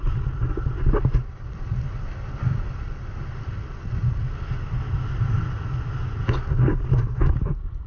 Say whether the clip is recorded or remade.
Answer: recorded